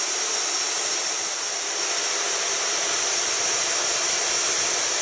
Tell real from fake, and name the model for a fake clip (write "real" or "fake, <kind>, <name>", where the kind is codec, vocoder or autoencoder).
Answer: real